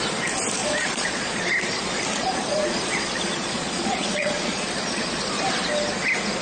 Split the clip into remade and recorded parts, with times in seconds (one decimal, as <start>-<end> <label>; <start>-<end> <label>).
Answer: 0.0-0.6 recorded; 0.6-1.5 remade; 1.5-2.1 recorded; 2.1-5.2 remade; 5.2-6.4 recorded